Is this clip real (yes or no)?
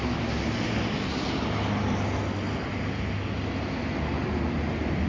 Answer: yes